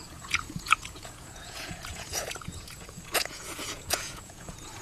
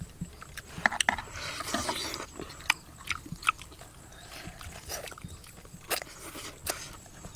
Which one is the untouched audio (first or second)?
second